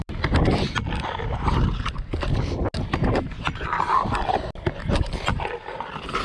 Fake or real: real